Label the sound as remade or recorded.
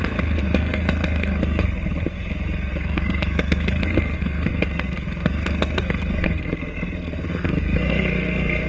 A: remade